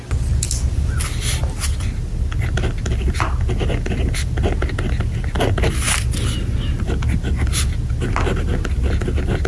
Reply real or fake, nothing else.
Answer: real